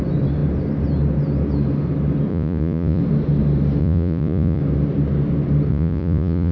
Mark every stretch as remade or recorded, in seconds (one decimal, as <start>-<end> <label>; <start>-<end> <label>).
0.0-2.3 recorded; 2.3-3.0 remade; 3.0-3.8 recorded; 3.8-4.6 remade; 4.6-5.7 recorded; 5.7-6.5 remade

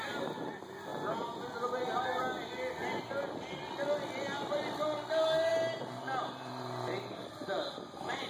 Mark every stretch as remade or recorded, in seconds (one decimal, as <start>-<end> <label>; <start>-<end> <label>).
0.0-8.3 recorded

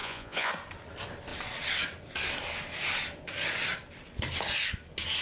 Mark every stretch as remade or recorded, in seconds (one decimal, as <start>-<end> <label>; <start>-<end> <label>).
0.0-0.5 remade; 0.5-5.2 recorded

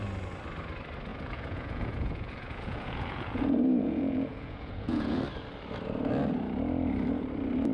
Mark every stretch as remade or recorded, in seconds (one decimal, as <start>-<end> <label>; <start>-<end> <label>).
0.0-1.1 recorded; 1.1-5.2 remade; 5.2-7.7 recorded

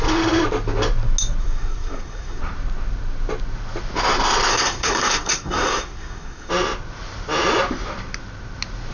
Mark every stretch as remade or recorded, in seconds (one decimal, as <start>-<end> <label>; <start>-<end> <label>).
0.0-1.4 recorded; 1.4-2.4 remade; 2.4-4.5 recorded; 4.5-6.5 remade; 6.5-8.9 recorded

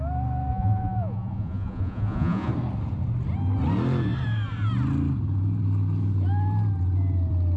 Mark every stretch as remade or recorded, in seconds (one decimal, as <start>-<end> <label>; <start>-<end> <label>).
0.0-0.5 recorded; 0.5-2.5 remade; 2.5-7.6 recorded

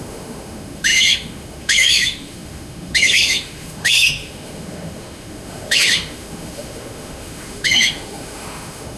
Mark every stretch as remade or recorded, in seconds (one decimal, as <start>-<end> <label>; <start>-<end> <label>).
0.0-9.0 remade

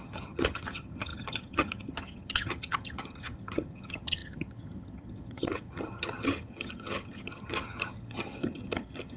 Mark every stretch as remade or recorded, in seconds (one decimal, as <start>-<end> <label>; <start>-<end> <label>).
0.0-9.2 remade